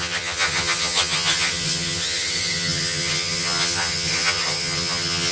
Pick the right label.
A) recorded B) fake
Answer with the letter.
B